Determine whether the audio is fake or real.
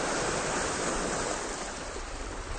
real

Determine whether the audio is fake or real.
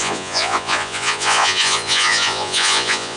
fake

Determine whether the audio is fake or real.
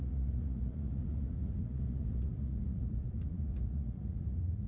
fake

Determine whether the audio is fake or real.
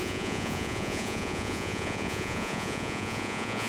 fake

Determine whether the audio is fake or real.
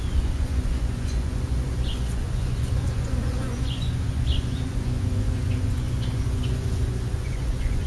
fake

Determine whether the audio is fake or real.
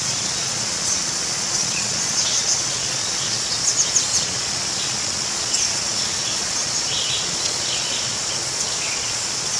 fake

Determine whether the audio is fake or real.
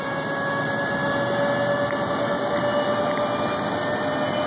real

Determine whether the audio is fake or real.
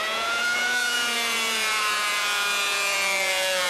fake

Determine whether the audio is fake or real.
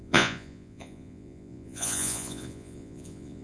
fake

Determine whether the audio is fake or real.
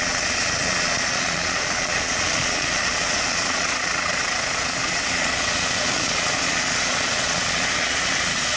fake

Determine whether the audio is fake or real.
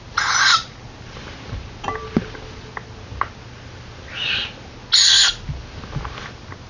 real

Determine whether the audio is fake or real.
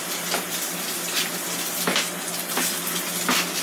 real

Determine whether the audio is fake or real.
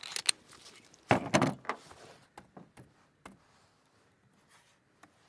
real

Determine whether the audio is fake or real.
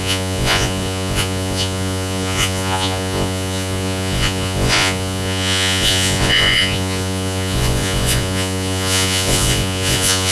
fake